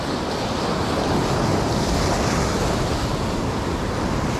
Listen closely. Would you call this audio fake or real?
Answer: real